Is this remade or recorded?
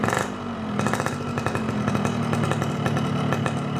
recorded